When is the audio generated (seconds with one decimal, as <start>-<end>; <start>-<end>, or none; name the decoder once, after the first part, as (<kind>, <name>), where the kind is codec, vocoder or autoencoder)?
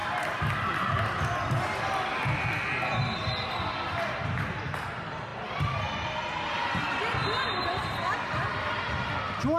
none